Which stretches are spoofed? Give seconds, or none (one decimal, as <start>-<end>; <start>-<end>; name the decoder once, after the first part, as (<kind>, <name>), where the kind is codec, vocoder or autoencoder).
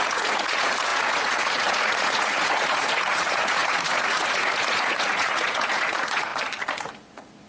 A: 0.0-6.3 (vocoder, Vocos); 6.9-7.5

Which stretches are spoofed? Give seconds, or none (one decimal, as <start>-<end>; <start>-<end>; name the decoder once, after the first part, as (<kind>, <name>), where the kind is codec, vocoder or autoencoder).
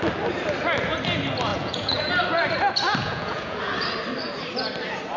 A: 1.5-2.1 (vocoder, Vocos); 3.0-3.6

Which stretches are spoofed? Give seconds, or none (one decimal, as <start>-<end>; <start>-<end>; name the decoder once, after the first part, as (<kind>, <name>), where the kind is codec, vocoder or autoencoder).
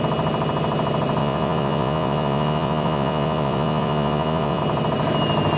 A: 1.2-4.6 (vocoder, Vocos)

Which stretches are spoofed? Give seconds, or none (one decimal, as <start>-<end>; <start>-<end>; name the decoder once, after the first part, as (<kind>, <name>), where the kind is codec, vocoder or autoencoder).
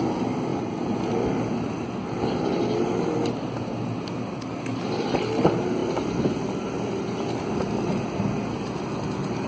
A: none